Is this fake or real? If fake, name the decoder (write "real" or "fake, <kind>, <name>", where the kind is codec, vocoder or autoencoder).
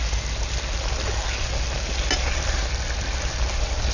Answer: real